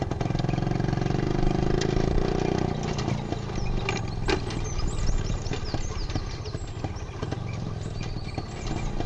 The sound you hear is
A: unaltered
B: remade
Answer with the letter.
A